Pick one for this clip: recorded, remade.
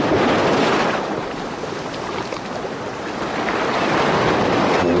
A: recorded